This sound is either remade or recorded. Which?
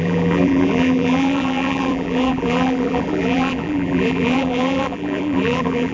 remade